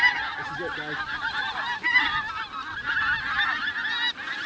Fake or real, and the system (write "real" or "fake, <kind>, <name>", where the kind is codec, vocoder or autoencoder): real